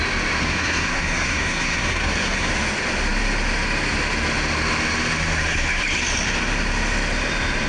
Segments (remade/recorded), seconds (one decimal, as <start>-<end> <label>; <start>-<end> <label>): 0.0-0.4 recorded; 0.4-2.5 remade; 2.5-7.7 recorded